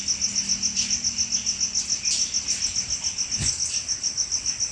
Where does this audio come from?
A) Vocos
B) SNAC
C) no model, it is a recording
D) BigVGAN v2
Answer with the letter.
C